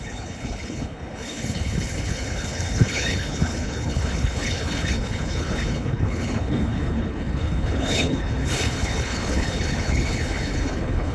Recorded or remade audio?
remade